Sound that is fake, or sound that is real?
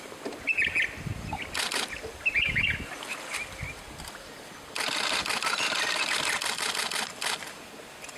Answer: real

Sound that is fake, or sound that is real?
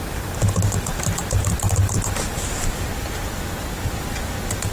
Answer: real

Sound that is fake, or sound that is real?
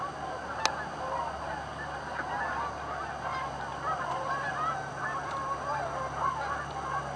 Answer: real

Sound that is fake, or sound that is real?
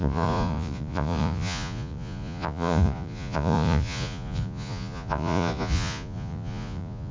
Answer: fake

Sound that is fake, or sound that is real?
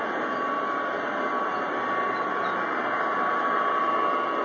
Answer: real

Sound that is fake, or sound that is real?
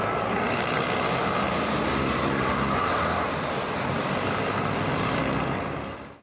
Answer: real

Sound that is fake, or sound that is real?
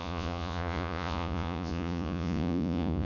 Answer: fake